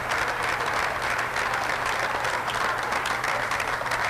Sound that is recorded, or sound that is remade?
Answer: remade